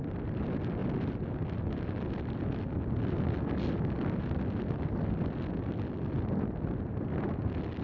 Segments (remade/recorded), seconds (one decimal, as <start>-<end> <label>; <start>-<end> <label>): 0.0-7.8 recorded